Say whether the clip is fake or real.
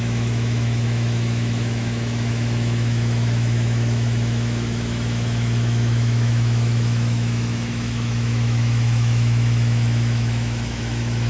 fake